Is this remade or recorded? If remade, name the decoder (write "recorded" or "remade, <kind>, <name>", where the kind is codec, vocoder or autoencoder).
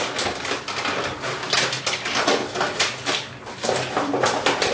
recorded